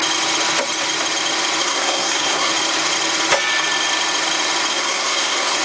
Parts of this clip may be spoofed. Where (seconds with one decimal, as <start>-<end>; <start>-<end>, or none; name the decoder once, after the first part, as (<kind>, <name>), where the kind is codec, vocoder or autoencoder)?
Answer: 1.6-2.5 (codec, SNAC); 4.7-5.6